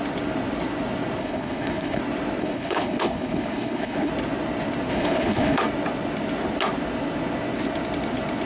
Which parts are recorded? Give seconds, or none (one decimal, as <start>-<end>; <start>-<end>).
0.0-1.2; 2.0-2.4; 4.1-4.9; 5.6-8.5